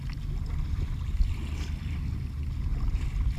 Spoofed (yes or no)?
no